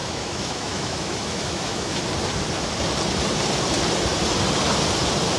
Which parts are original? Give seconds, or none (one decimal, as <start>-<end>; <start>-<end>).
2.0-5.4